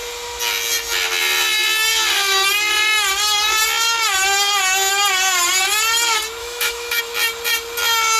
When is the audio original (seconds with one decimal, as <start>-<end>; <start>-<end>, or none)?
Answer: 0.0-6.4; 7.0-8.2